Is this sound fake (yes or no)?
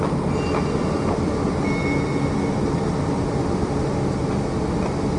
no